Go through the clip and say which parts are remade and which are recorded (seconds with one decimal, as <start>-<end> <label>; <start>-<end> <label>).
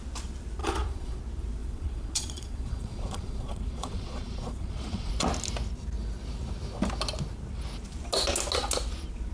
0.0-0.6 recorded; 0.6-1.2 remade; 1.2-1.6 recorded; 1.6-5.1 remade; 5.1-9.3 recorded